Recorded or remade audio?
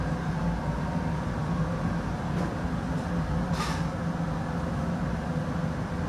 recorded